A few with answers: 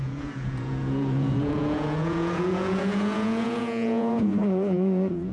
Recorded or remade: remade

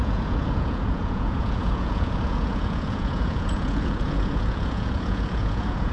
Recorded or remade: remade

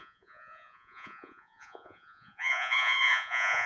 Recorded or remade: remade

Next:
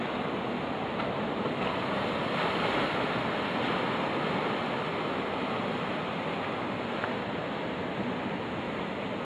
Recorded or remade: recorded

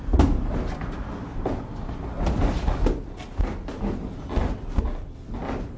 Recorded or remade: recorded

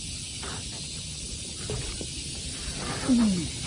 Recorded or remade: recorded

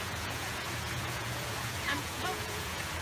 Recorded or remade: remade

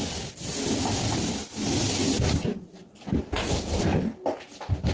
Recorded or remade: recorded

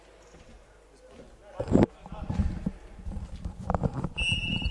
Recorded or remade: recorded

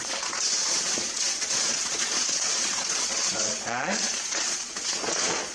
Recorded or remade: remade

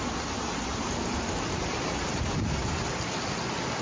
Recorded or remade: recorded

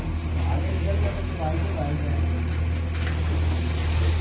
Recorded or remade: recorded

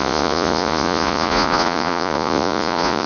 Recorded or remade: remade